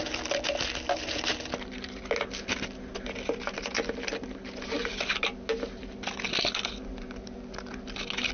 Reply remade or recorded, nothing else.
recorded